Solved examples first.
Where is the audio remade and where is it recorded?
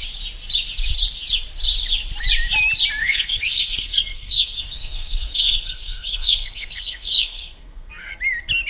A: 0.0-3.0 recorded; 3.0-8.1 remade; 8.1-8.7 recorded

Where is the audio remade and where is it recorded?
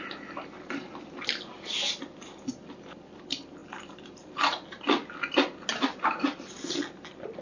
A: 0.0-7.4 recorded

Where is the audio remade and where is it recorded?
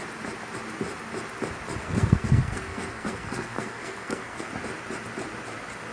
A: 0.0-1.8 recorded; 1.8-4.5 remade; 4.5-5.9 recorded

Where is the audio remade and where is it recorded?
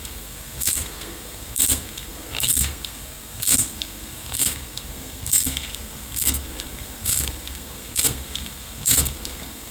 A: 0.0-9.7 remade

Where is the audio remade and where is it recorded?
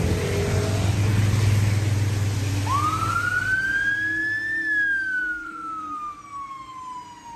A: 0.0-5.2 recorded; 5.2-5.8 remade; 5.8-7.4 recorded